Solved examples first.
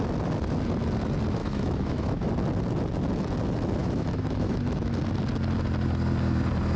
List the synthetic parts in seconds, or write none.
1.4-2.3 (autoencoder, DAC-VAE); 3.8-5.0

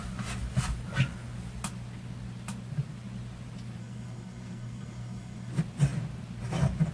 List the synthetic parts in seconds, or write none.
3.8-5.5 (codec, SNAC)

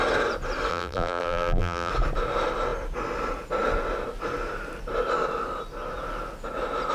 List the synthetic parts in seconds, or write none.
0.7-1.9 (vocoder, BigVGAN v2)

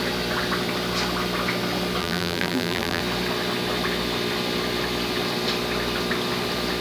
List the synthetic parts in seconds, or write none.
2.0-3.0 (vocoder, BigVGAN v2)

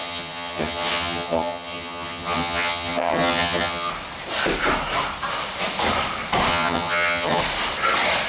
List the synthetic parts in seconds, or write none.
0.0-3.9 (vocoder, HiFi-GAN); 6.5-7.4

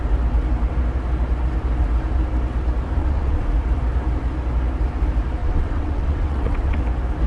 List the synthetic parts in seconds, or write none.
3.0-3.5 (vocoder, WaveNeXt); 5.4-6.8

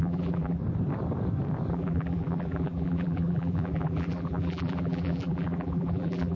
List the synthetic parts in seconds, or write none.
0.0-0.6 (vocoder, BigVGAN v2); 1.7-6.4